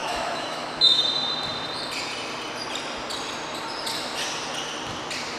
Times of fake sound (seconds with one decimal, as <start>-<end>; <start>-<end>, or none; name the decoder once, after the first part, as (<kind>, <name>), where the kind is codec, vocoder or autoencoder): 0.0-1.0 (autoencoder, DAC-VAE)

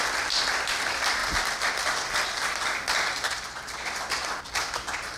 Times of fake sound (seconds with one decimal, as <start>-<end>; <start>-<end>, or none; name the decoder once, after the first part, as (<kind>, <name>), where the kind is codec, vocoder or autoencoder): 0.0-5.2 (vocoder, BigVGAN v2)

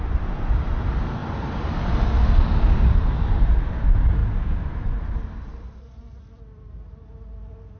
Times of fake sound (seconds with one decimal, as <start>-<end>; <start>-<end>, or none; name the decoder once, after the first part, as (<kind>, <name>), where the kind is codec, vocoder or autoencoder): none

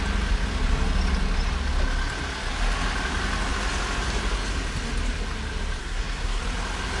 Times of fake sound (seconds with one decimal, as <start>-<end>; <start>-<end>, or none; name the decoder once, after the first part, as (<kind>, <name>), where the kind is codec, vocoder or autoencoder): 5.8-6.4 (codec, SNAC)